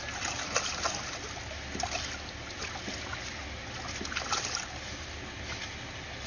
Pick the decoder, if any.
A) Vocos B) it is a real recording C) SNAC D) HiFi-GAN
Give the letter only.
B